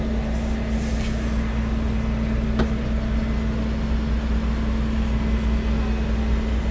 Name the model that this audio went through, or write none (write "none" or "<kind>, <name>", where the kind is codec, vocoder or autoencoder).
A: none